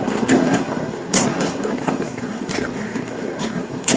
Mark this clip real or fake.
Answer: fake